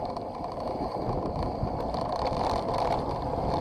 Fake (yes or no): yes